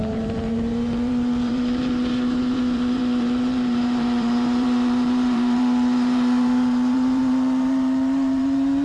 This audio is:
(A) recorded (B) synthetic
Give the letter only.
B